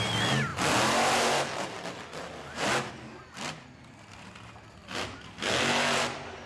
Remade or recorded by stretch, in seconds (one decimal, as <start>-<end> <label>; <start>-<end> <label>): 0.0-6.5 recorded